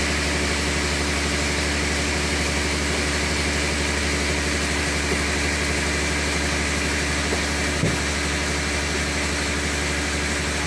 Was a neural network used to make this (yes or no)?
no